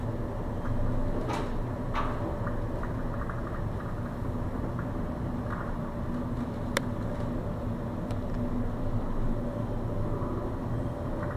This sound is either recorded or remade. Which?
recorded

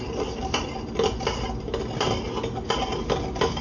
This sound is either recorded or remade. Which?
recorded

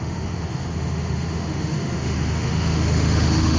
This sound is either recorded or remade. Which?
remade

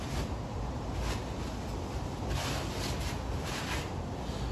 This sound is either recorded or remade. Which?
recorded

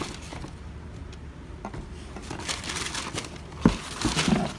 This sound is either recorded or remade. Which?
recorded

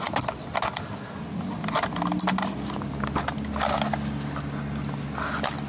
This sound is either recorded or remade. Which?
recorded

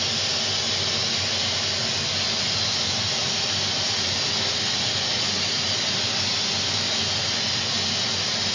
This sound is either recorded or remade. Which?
recorded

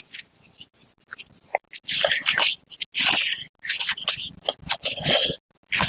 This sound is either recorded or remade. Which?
recorded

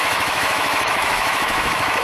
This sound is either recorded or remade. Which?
remade